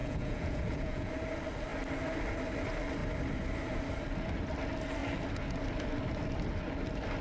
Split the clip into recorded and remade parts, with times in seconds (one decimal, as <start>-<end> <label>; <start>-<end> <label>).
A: 0.0-1.1 remade; 1.1-7.2 recorded